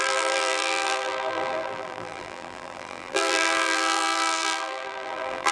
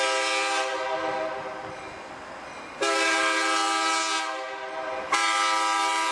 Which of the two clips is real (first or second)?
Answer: second